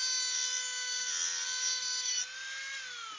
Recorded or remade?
recorded